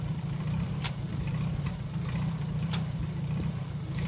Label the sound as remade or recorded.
remade